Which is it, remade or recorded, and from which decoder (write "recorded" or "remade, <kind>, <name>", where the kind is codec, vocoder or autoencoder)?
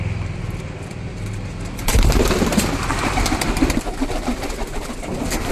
recorded